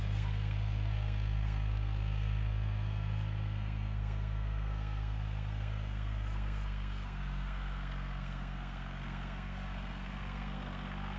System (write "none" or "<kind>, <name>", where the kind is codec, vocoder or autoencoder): codec, SNAC